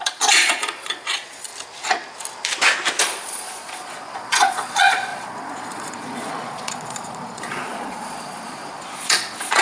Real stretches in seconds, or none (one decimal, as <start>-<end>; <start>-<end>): 1.5-3.0